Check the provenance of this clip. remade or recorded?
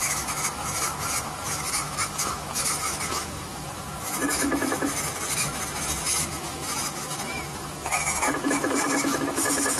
remade